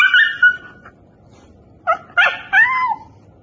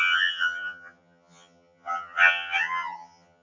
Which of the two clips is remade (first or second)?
second